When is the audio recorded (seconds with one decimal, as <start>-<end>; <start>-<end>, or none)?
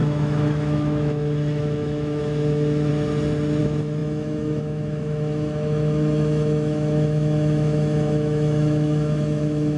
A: 2.9-3.6